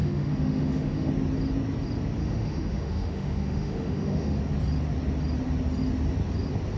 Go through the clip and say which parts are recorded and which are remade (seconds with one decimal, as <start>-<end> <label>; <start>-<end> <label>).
0.0-1.1 remade; 1.1-2.2 recorded; 2.2-4.4 remade; 4.4-6.8 recorded